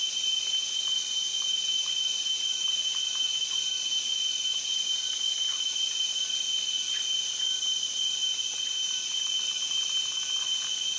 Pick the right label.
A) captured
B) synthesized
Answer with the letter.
A